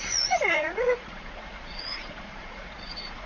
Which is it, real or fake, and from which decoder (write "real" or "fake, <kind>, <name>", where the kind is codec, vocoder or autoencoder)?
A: fake, vocoder, Vocos